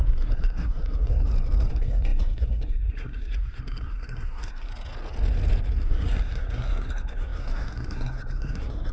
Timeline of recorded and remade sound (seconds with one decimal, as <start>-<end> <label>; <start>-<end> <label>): 0.0-1.2 remade; 1.2-1.7 recorded; 1.7-4.7 remade; 4.7-5.8 recorded; 5.8-8.9 remade